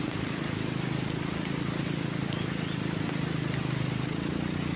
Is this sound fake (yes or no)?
no